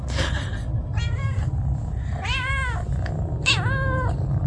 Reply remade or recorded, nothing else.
recorded